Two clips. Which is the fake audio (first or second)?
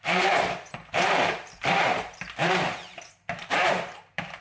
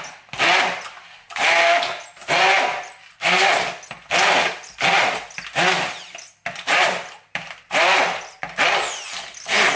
first